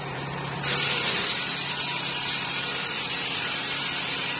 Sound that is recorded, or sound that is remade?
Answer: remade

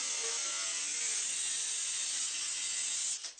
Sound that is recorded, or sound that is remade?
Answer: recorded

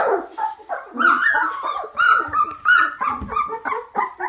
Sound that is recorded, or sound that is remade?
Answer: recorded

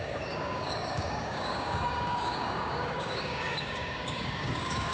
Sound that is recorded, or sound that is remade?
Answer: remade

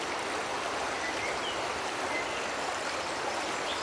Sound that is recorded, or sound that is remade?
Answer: recorded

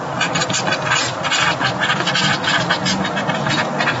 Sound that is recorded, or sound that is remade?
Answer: recorded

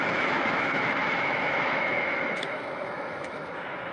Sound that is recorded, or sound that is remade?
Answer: remade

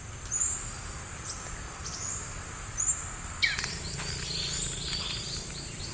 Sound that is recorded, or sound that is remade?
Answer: recorded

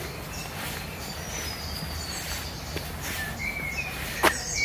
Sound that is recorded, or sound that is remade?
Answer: recorded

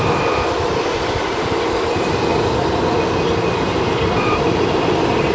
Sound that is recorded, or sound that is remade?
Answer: remade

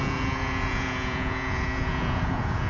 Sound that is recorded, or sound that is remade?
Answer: remade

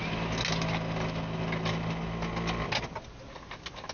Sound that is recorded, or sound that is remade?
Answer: recorded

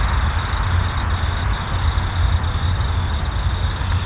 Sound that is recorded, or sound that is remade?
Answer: recorded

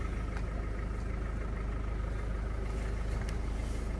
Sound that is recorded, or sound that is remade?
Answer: recorded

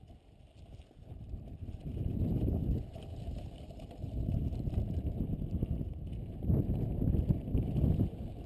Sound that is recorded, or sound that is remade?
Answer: remade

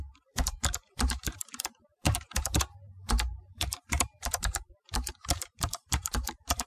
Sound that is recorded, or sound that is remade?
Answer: remade